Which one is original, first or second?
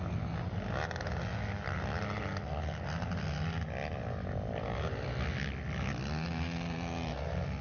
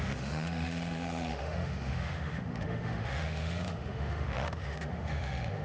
first